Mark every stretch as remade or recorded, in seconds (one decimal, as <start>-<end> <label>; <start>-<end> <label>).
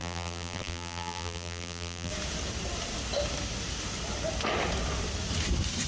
0.0-2.1 remade; 2.1-5.9 recorded